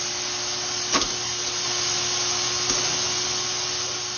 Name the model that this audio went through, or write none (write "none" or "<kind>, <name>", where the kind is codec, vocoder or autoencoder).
none